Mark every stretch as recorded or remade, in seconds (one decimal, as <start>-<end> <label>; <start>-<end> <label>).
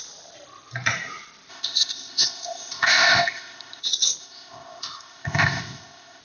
0.0-1.5 recorded; 1.5-3.8 remade; 3.8-4.2 recorded; 4.2-6.2 remade